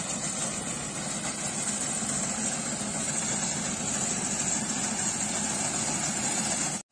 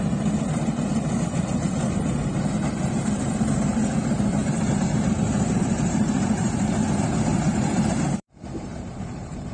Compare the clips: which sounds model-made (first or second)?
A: second